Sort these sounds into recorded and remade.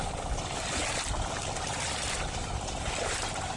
recorded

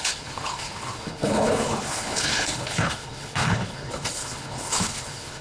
remade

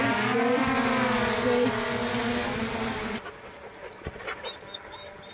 recorded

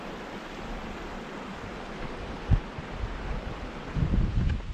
recorded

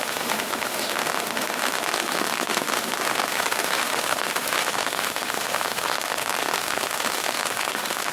remade